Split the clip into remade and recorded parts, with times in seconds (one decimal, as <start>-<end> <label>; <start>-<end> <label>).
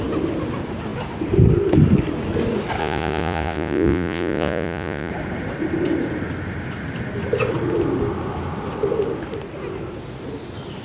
0.0-2.8 recorded; 2.8-5.1 remade; 5.1-10.8 recorded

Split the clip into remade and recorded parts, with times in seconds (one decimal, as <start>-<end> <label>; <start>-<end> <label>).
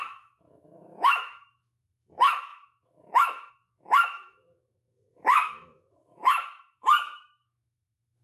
0.0-8.2 remade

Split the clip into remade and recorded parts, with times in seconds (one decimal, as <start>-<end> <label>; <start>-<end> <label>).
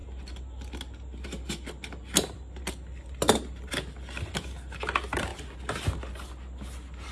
0.0-7.1 recorded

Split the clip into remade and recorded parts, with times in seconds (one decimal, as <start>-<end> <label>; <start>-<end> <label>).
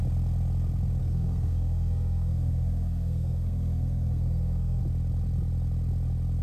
0.0-1.0 recorded; 1.0-4.8 remade; 4.8-6.4 recorded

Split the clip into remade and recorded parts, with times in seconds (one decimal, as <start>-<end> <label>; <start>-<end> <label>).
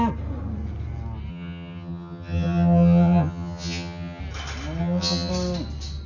0.0-1.3 recorded; 1.3-4.2 remade; 4.2-4.8 recorded; 4.8-5.3 remade; 5.3-6.1 recorded